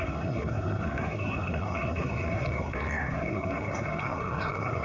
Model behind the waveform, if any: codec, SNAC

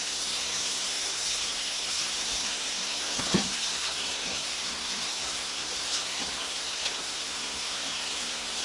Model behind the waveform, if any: codec, SNAC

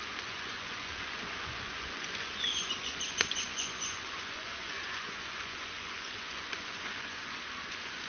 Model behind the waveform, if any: vocoder, Vocos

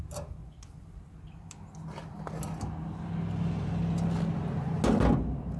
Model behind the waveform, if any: none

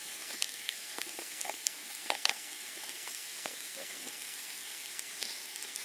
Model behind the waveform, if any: codec, SNAC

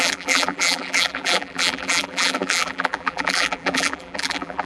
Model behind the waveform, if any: vocoder, BigVGAN v2